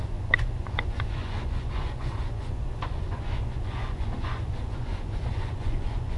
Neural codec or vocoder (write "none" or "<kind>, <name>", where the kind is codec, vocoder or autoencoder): vocoder, Vocos